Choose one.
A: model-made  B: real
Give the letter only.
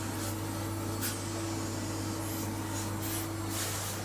B